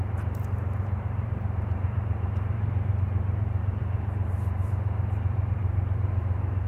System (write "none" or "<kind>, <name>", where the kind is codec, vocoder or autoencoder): vocoder, BigVGAN v2